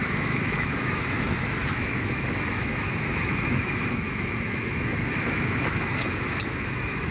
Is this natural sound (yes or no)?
no